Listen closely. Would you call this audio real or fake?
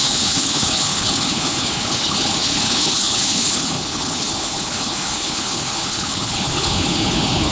fake